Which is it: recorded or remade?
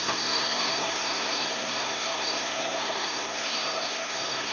remade